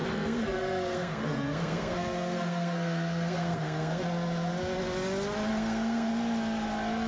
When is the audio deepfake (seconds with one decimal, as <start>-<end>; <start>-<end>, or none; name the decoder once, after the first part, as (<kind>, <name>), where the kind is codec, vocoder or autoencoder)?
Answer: 0.0-4.0 (codec, SNAC); 5.5-6.1